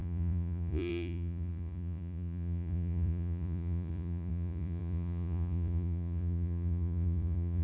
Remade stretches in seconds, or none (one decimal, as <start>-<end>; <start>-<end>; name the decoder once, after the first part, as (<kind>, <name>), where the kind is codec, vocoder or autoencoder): 0.0-7.6 (vocoder, Vocos)